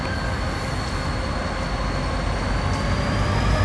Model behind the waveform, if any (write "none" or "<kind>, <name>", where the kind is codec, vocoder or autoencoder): none